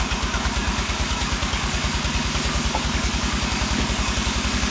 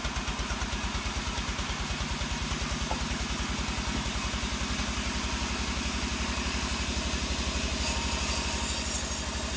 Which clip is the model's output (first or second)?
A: first